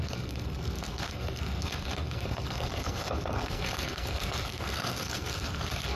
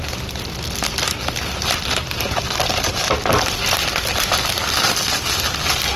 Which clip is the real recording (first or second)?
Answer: second